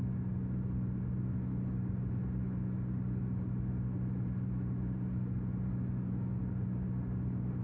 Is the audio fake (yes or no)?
no